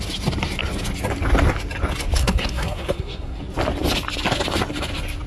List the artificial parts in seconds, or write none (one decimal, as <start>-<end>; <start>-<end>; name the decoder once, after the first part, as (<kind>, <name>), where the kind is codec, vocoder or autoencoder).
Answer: 2.2-3.4 (codec, SNAC)